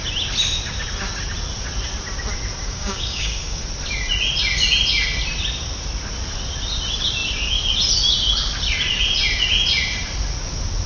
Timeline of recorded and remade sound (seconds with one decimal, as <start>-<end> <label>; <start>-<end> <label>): 0.0-2.6 recorded; 2.6-3.6 remade; 3.6-10.9 recorded